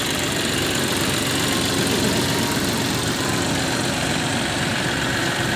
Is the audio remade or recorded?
remade